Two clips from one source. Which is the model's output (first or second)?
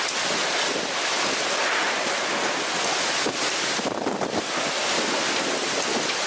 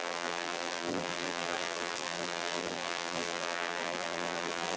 second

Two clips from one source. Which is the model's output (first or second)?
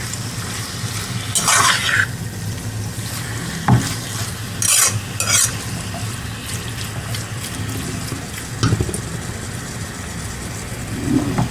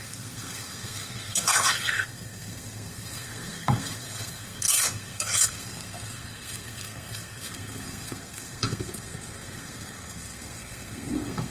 second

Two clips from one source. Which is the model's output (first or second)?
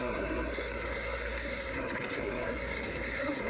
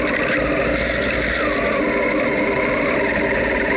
first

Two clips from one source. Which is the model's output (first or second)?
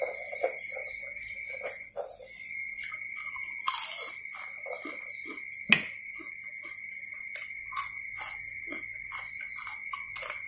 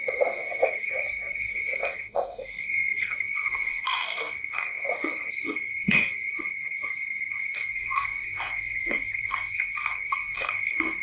second